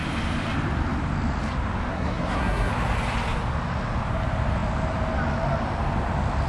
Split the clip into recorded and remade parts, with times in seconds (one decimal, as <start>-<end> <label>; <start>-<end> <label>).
0.0-1.9 recorded; 1.9-2.7 remade; 2.7-6.5 recorded